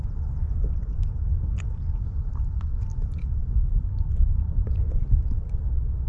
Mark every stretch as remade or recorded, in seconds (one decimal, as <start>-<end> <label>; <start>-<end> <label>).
0.0-3.4 recorded; 3.4-5.1 remade; 5.1-6.1 recorded